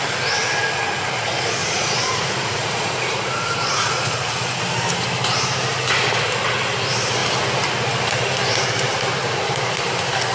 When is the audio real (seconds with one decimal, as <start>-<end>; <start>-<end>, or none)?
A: 0.0-1.6; 4.3-10.3